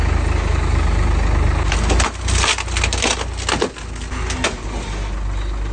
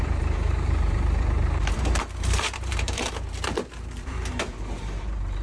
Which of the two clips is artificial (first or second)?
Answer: second